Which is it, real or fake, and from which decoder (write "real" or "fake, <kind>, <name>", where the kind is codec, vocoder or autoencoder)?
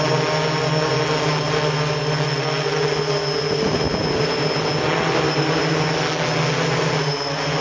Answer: real